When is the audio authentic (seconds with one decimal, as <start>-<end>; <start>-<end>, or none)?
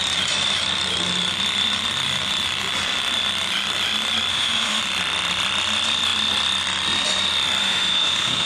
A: 0.0-4.3; 4.8-7.6